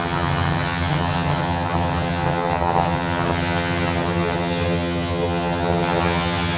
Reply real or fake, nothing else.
fake